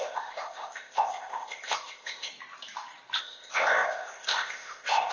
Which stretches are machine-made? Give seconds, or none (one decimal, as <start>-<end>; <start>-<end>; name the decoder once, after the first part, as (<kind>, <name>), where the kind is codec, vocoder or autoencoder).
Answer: 0.0-2.3 (codec, ZipCodec); 3.2-5.1